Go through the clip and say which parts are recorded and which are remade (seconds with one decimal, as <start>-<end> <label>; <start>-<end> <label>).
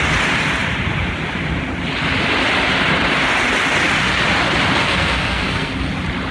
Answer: 0.0-4.8 recorded; 4.8-5.7 remade; 5.7-6.3 recorded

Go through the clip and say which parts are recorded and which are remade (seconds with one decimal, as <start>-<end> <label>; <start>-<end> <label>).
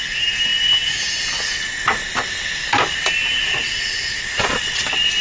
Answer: 0.0-3.4 recorded; 3.4-4.8 remade; 4.8-5.2 recorded